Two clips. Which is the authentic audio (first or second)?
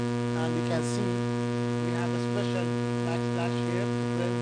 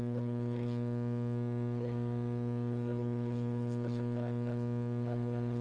first